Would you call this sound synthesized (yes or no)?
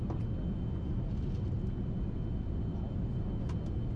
no